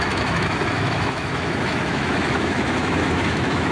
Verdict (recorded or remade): remade